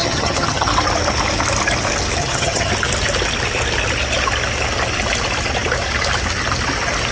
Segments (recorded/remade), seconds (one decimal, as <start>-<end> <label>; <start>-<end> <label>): 0.0-0.7 remade; 0.7-2.2 recorded; 2.2-2.7 remade; 2.7-7.1 recorded